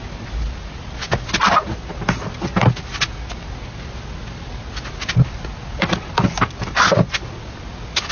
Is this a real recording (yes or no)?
yes